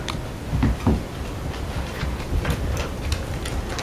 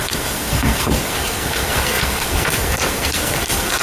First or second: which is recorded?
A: first